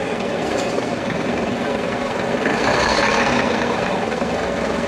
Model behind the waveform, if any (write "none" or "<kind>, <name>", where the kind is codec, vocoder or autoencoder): codec, SNAC